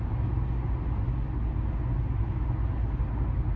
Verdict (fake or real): real